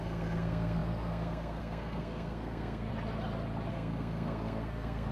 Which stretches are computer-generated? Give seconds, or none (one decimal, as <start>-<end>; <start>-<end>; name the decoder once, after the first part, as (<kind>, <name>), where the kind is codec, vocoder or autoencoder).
0.0-2.9 (codec, SNAC); 3.7-5.1